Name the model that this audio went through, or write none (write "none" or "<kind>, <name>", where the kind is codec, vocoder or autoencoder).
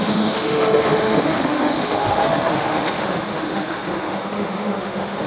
autoencoder, DAC-VAE